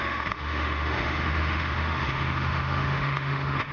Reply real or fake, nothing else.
fake